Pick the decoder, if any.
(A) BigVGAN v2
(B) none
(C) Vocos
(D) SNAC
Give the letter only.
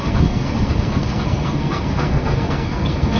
D